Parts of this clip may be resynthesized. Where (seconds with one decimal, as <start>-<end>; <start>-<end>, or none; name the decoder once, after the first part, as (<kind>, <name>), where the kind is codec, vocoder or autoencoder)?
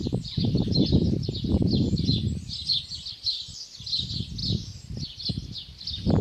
none